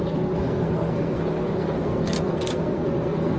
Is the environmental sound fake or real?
fake